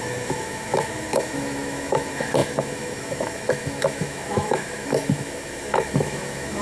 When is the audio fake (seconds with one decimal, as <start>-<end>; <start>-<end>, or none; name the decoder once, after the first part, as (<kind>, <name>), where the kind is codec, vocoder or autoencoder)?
0.0-6.6 (autoencoder, DAC-VAE)